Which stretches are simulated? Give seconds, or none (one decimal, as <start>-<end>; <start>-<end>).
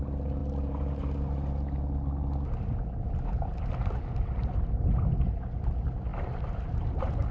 6.1-7.3